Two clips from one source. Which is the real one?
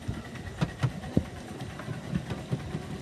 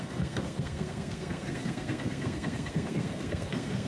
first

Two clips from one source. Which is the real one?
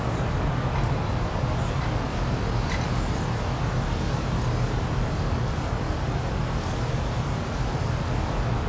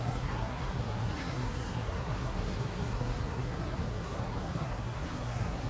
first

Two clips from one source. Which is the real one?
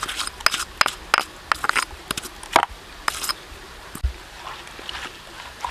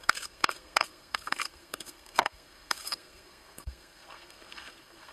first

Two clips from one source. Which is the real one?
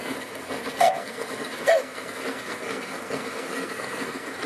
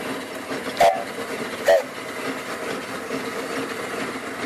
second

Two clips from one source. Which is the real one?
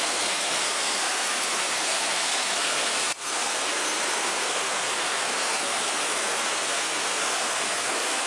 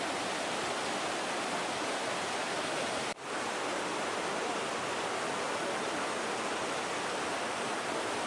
second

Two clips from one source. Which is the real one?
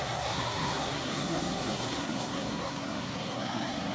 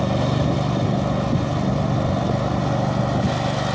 second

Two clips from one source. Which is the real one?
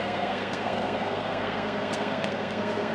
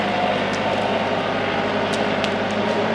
second